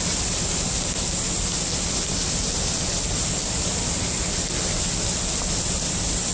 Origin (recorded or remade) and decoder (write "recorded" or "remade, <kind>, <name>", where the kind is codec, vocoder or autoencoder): recorded